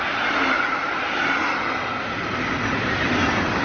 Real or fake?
real